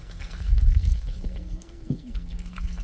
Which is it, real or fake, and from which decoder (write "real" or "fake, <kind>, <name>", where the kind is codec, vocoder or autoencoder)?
fake, codec, SNAC